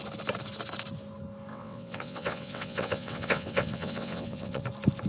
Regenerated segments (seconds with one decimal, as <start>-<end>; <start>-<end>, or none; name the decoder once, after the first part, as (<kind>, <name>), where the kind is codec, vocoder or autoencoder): 1.5-4.6 (vocoder, WaveNeXt)